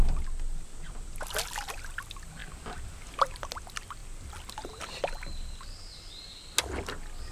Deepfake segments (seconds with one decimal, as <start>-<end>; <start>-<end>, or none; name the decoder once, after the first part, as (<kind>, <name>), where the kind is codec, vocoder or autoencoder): none